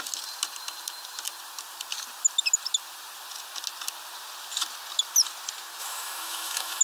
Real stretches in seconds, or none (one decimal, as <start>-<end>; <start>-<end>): 0.0-5.8